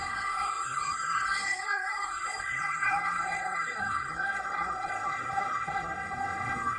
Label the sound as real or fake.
fake